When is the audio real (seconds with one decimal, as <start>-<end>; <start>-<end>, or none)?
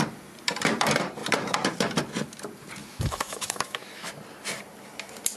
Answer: 0.0-2.8; 4.1-5.4